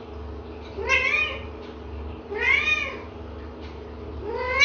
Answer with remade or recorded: recorded